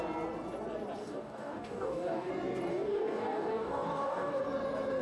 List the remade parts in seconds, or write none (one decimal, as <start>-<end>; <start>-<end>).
1.0-2.3; 2.7-4.4